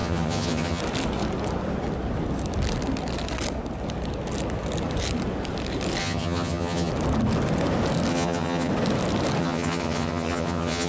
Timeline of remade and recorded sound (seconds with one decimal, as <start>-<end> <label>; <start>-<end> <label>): 0.0-0.8 remade; 0.8-6.0 recorded; 6.0-6.9 remade; 6.9-8.1 recorded; 8.1-8.7 remade; 8.7-9.4 recorded; 9.4-10.9 remade